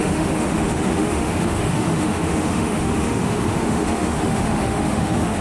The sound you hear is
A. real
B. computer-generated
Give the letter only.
B